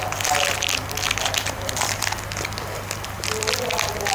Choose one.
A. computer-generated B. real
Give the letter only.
B